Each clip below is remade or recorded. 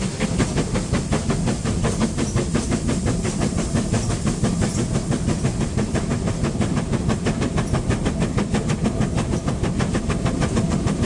recorded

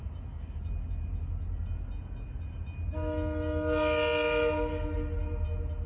recorded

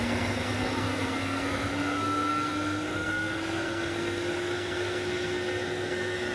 remade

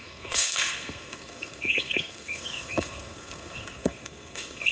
remade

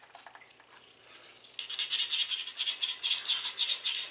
recorded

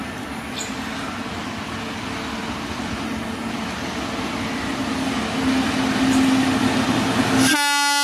recorded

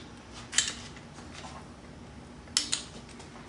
recorded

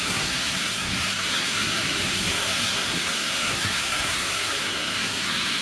remade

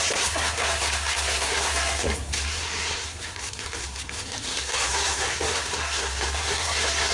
remade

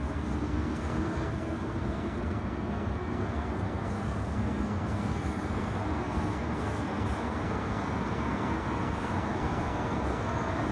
remade